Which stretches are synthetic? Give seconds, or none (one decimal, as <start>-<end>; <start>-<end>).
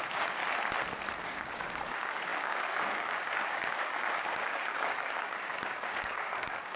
0.0-0.4; 1.2-6.8